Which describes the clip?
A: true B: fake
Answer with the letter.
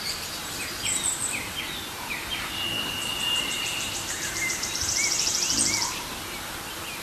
B